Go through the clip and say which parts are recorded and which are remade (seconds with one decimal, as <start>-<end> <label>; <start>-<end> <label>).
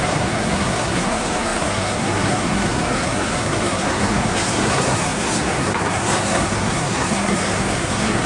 0.0-8.3 remade